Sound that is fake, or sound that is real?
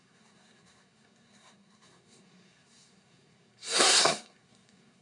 fake